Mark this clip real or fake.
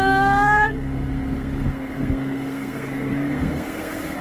fake